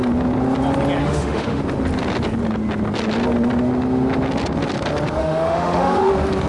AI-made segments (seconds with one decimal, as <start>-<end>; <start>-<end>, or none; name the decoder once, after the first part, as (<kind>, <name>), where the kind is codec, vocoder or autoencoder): 1.0-1.6 (autoencoder, DAC-VAE); 5.2-6.1